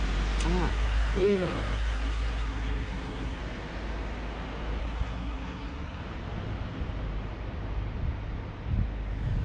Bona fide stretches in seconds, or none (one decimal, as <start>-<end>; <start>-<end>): 0.0-0.7; 3.4-4.8; 6.0-9.4

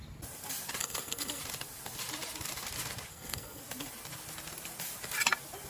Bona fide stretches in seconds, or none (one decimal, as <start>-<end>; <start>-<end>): 0.0-0.8; 1.4-3.1; 3.6-5.7

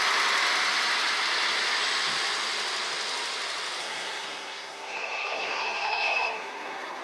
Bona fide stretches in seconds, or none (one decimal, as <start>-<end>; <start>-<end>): 0.0-3.8

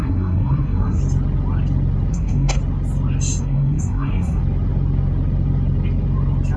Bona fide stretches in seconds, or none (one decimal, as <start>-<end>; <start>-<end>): 1.0-2.1; 2.6-3.4; 4.4-6.6